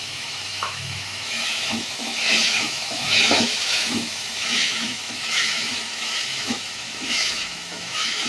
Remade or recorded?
remade